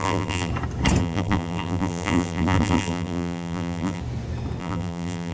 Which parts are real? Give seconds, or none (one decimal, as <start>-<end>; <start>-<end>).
0.5-1.0; 4.0-4.6